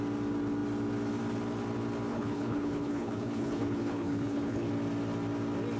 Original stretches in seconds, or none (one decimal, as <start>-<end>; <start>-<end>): 0.0-2.1; 4.7-5.8